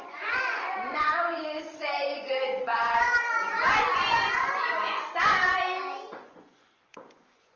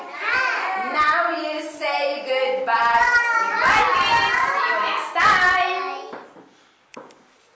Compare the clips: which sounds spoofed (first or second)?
first